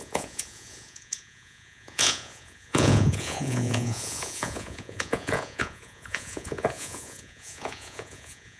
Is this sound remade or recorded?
remade